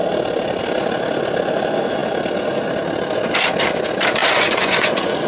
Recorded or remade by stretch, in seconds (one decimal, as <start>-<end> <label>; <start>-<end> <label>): 0.0-4.2 recorded; 4.2-5.3 remade